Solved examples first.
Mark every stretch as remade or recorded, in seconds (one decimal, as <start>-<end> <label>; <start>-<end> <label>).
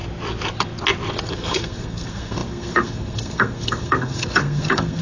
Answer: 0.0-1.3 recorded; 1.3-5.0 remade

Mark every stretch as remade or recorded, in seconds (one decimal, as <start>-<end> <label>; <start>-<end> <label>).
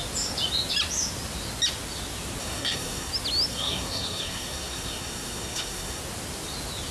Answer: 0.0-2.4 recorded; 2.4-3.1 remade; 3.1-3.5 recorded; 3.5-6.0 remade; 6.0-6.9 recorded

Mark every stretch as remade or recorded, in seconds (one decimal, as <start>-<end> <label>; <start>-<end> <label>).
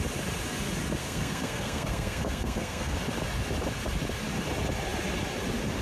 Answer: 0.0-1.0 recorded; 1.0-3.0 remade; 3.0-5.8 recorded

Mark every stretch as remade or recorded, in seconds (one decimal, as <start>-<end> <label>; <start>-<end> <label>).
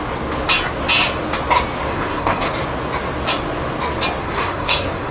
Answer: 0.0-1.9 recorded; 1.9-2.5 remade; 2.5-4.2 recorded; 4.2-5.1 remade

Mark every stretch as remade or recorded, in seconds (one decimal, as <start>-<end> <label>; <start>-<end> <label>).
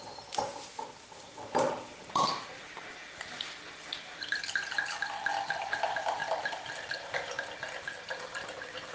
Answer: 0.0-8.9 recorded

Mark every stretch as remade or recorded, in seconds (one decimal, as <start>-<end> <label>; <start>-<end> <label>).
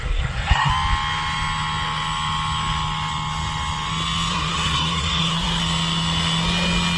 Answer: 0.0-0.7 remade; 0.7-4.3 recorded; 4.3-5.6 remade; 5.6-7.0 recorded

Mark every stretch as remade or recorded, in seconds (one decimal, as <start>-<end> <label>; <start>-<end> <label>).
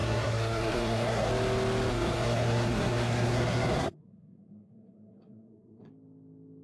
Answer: 0.0-1.3 remade; 1.3-1.9 recorded; 1.9-5.9 remade; 5.9-6.6 recorded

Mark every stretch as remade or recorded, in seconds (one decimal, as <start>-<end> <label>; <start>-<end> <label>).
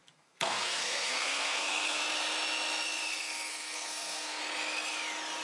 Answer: 0.0-2.0 remade; 2.0-3.1 recorded; 3.1-4.4 remade; 4.4-5.4 recorded